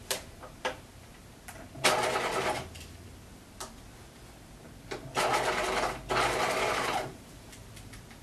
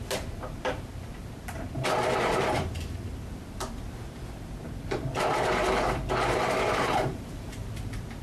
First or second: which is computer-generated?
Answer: second